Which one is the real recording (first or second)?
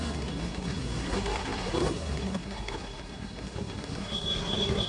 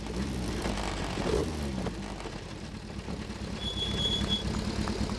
second